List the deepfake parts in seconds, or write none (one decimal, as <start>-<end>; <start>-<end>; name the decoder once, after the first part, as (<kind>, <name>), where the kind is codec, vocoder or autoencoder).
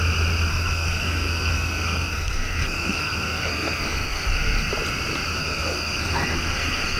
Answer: 0.5-4.7 (codec, SNAC); 5.4-7.0